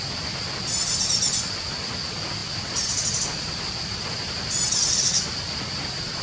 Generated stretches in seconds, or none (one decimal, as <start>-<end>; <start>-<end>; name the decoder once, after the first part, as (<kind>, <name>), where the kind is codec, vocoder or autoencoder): none